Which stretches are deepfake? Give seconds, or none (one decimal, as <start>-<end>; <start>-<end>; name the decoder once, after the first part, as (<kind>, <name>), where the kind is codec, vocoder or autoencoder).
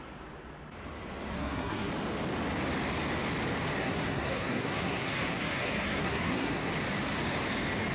1.3-1.9 (codec, SNAC); 3.8-6.7